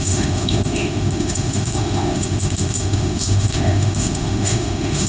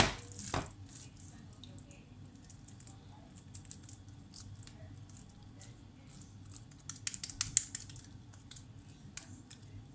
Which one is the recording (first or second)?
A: second